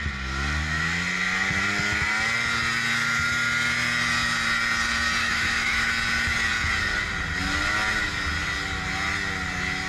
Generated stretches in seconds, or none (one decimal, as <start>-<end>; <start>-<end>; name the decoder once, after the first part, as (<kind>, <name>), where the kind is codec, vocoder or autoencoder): 5.2-5.9 (autoencoder, DAC-VAE)

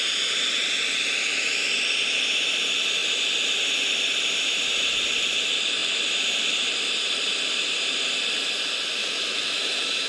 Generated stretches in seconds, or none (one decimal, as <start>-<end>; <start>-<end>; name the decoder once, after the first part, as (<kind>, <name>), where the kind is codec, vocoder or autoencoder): 9.0-10.1 (autoencoder, DAC-VAE)

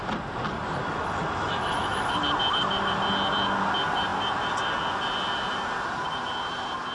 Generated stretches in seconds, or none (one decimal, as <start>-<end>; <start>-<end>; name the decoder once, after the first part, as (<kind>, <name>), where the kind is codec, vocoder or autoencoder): 0.8-2.2 (autoencoder, DAC-VAE)

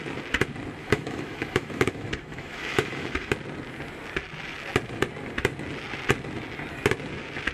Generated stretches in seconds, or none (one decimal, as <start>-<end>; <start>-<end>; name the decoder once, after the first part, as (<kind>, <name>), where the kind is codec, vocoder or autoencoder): 0.8-3.3 (autoencoder, DAC-VAE)

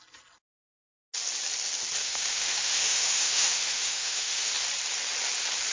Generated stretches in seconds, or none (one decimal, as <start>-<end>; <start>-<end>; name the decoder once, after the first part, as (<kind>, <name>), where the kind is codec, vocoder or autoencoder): 2.0-4.5 (autoencoder, DAC-VAE)